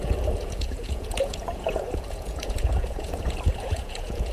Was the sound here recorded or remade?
remade